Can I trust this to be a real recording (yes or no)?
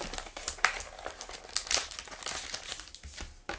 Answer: yes